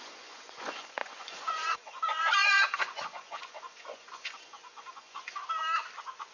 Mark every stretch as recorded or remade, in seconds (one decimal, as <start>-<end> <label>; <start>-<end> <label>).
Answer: 0.0-5.4 remade; 5.4-6.3 recorded